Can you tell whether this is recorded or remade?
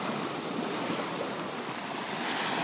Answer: recorded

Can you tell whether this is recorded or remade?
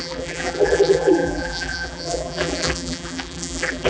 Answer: remade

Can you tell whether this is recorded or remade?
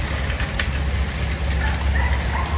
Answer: recorded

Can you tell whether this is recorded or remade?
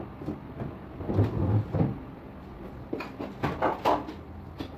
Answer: recorded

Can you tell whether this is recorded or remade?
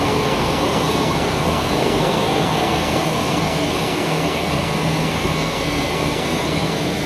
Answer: remade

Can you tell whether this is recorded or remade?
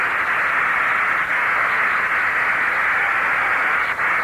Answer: recorded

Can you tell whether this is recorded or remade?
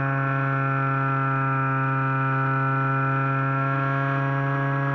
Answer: recorded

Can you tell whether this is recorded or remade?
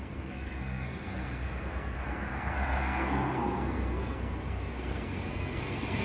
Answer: remade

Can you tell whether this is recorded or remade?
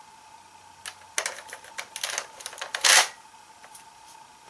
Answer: recorded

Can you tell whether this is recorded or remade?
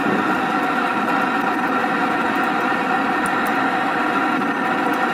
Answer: recorded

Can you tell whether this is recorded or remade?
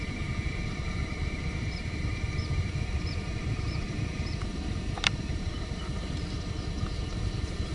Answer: remade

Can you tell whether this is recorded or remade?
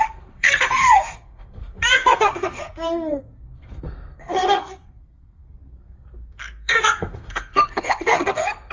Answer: remade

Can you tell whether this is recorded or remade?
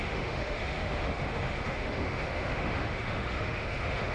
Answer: remade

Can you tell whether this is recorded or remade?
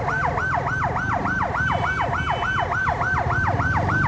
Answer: recorded